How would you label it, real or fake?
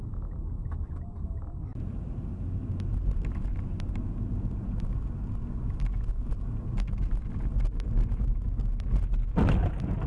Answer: real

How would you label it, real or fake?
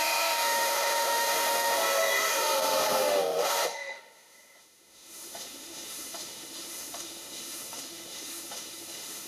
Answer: fake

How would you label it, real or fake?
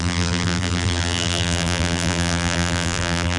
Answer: fake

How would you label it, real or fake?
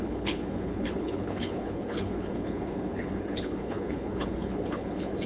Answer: fake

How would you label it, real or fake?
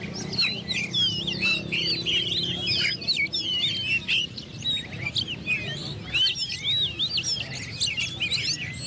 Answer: real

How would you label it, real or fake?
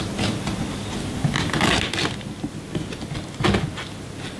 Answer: real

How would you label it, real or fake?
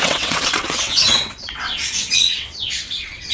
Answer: fake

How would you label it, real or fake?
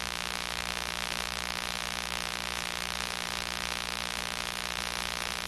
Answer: fake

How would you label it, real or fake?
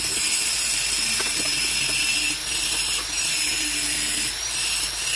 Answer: fake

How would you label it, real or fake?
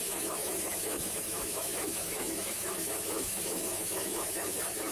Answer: fake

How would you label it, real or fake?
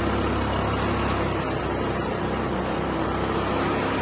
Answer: real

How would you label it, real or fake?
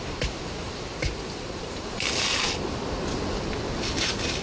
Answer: real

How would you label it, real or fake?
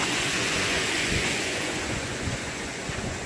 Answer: fake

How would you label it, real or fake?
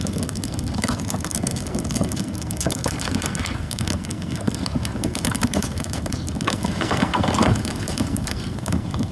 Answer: fake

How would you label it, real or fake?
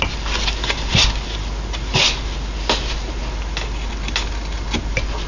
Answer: real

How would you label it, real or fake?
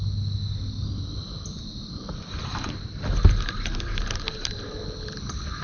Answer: real